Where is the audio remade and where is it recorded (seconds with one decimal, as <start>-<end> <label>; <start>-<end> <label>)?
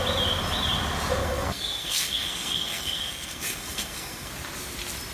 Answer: 0.0-1.2 recorded; 1.2-4.3 remade; 4.3-5.1 recorded